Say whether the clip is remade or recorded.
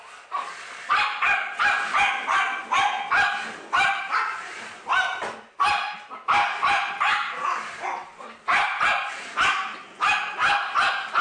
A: recorded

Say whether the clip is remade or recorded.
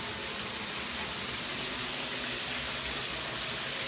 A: recorded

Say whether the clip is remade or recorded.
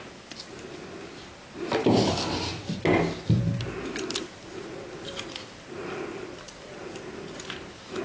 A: recorded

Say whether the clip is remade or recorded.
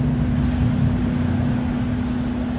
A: recorded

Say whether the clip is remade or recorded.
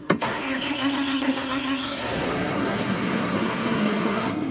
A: remade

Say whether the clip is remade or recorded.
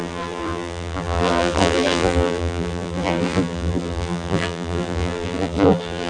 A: remade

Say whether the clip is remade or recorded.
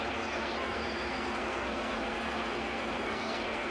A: remade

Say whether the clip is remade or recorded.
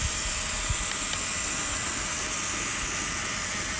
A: recorded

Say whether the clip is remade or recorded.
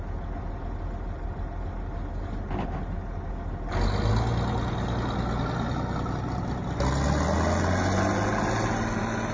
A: recorded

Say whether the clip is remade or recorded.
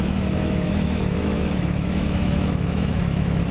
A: remade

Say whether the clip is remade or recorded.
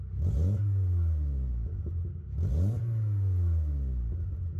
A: recorded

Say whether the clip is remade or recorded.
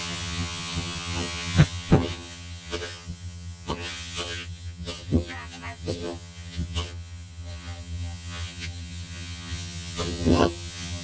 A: remade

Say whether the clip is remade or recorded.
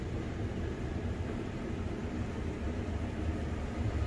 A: recorded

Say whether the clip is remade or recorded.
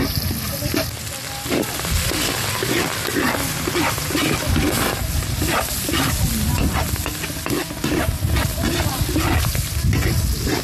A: remade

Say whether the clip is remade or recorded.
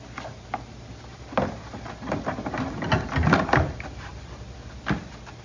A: recorded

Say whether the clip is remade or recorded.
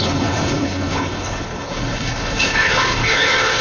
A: remade